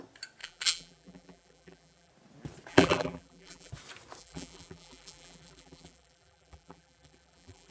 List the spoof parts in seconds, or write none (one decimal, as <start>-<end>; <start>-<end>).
0.4-2.1; 2.7-3.7; 4.2-7.7